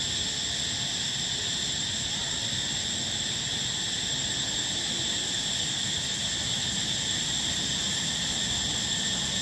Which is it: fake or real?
real